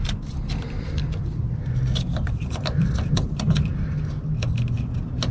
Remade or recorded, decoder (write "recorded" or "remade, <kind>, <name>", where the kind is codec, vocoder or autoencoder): recorded